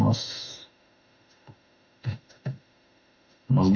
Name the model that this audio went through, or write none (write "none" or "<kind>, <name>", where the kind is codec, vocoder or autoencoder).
autoencoder, DAC-VAE